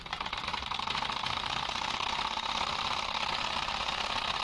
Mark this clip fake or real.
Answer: fake